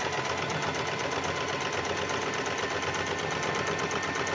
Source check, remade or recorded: recorded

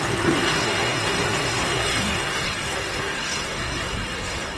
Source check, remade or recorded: remade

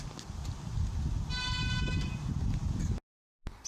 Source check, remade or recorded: recorded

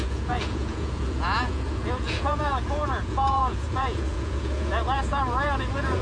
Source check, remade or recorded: remade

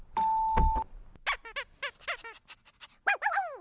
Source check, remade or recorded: recorded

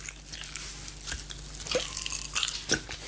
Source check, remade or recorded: recorded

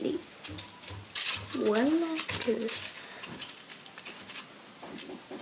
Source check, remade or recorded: recorded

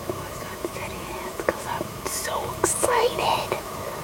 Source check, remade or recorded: remade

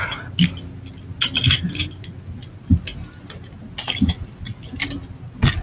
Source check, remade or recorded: recorded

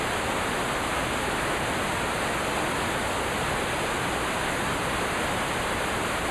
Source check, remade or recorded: recorded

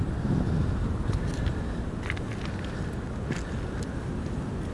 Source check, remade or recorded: recorded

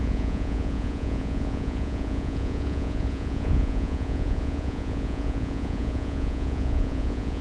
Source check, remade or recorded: remade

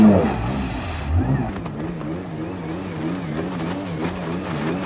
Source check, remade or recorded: recorded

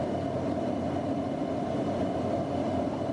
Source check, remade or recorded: recorded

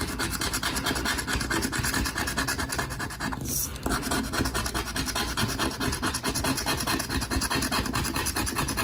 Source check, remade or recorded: recorded